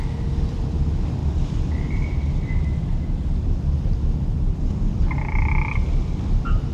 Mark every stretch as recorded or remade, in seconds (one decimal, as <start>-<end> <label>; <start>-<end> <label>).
0.0-6.7 recorded